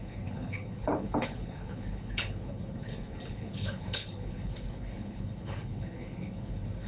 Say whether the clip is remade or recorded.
remade